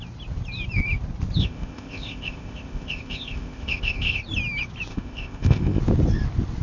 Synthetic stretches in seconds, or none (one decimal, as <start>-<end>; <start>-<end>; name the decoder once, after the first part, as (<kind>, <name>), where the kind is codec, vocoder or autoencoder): 1.4-4.2 (codec, ZipCodec); 4.9-5.8

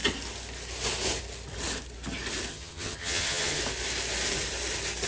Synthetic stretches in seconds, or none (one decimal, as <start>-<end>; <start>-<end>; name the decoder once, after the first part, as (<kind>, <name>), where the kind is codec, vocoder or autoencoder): 2.5-3.6 (vocoder, HiFi-GAN)